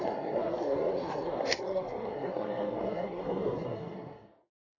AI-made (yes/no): yes